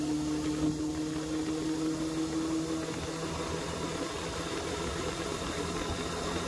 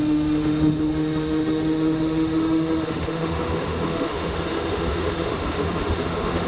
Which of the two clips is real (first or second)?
first